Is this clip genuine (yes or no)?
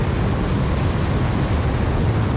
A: yes